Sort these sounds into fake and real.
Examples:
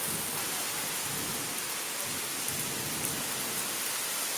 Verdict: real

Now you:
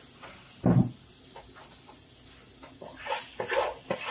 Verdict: real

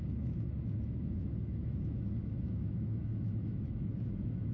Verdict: fake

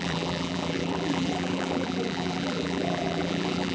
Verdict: fake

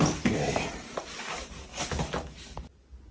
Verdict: real